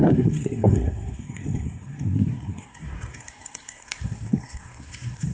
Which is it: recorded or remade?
remade